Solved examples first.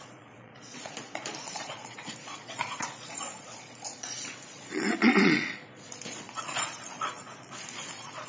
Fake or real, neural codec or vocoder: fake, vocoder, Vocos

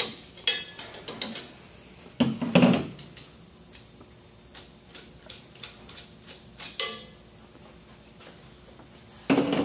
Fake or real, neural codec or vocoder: real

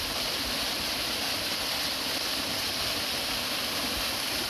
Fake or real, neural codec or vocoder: real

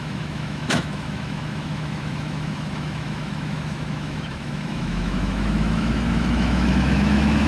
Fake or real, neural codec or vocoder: fake, autoencoder, DAC-VAE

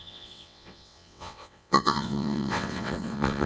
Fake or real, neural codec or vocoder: fake, vocoder, WaveNeXt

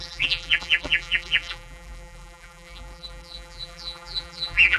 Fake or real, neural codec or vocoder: fake, vocoder, BigVGAN v2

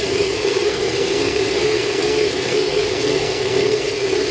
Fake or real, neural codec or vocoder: fake, codec, SNAC